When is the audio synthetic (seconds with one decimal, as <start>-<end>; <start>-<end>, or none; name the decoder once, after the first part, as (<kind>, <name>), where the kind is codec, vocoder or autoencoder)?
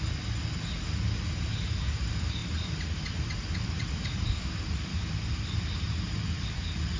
none